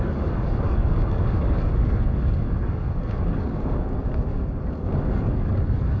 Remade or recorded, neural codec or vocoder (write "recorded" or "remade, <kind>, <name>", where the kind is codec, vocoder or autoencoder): remade, codec, DAC